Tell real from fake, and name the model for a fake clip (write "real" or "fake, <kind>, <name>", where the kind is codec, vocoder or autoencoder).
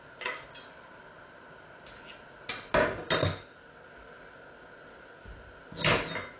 real